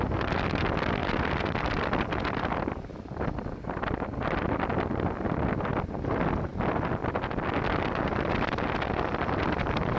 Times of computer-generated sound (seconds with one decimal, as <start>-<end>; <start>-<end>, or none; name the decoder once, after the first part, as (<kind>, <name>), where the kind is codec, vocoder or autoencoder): 1.0-6.1 (vocoder, BigVGAN v2)